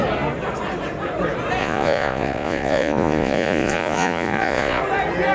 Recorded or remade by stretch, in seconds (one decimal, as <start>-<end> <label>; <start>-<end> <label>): 0.0-1.6 recorded; 1.6-4.8 remade; 4.8-5.3 recorded

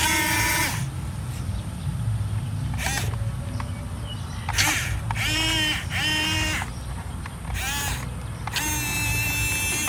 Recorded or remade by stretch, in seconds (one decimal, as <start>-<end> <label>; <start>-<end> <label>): 0.0-0.6 remade; 0.6-9.9 recorded

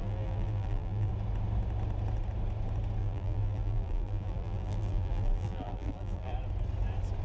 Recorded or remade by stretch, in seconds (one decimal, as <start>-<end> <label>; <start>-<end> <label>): 0.0-1.1 remade; 1.1-3.0 recorded; 3.0-6.3 remade; 6.3-7.2 recorded

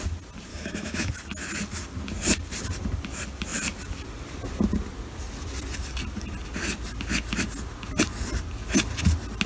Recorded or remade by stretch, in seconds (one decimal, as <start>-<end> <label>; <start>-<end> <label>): 0.0-0.5 recorded; 0.5-1.1 remade; 1.1-9.5 recorded